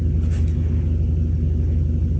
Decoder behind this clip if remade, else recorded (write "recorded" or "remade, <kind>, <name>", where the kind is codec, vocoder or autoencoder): recorded